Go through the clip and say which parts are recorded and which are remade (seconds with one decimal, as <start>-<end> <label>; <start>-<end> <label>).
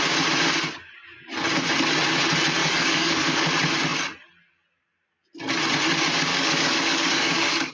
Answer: 0.0-2.6 recorded; 2.6-3.5 remade; 3.5-6.3 recorded; 6.3-7.7 remade